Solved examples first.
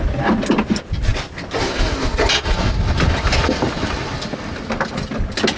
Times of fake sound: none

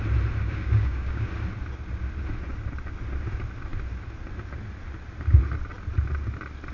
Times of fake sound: 0.4-1.3 (codec, DAC)

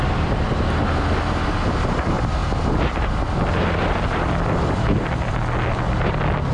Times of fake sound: none

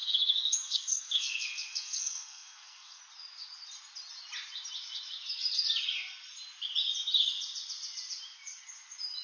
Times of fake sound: 0.0-3.0 (codec, SNAC)

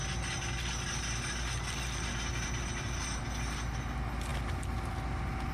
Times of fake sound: none

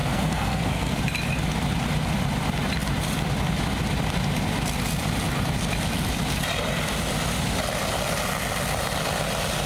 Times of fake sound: 0.0-1.0 (codec, SNAC)

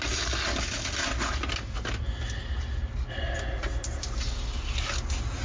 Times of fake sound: none